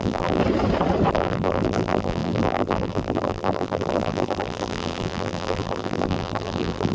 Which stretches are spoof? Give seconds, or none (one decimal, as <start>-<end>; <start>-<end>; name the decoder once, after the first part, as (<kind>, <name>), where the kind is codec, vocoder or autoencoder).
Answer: 0.0-0.4 (vocoder, BigVGAN v2); 1.1-6.9